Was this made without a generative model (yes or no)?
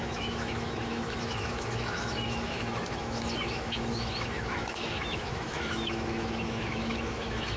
no